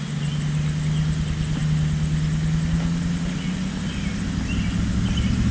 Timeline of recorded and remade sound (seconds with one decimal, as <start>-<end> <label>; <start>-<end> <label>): 0.0-5.5 recorded

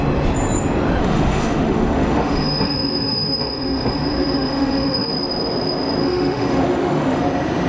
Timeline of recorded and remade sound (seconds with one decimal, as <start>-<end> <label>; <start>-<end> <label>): 0.0-1.0 recorded; 1.0-5.1 remade; 5.1-6.0 recorded; 6.0-7.2 remade; 7.2-7.7 recorded

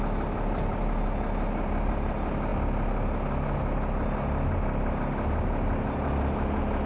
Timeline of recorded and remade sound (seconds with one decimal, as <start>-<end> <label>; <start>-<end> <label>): 0.0-6.9 recorded

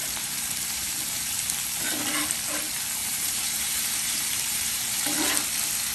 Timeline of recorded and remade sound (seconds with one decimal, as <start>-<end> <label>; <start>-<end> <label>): 0.0-0.9 remade; 0.9-3.0 recorded; 3.0-5.0 remade; 5.0-5.9 recorded

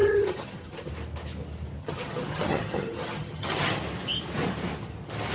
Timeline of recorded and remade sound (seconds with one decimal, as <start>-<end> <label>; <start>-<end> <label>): 0.0-0.9 remade; 0.9-1.8 recorded; 1.8-3.8 remade; 3.8-5.3 recorded